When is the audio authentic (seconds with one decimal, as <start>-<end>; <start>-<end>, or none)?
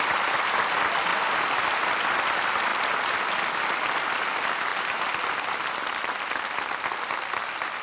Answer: 1.1-1.9; 2.7-3.4